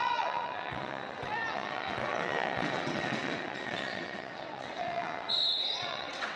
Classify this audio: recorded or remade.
remade